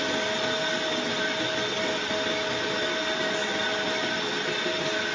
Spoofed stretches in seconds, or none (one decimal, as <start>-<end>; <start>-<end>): none